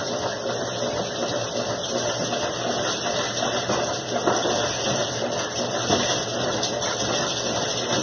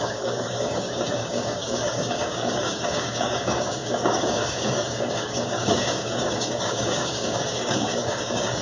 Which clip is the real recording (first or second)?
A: first